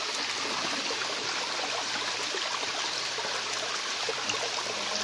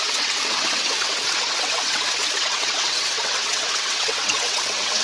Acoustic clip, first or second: first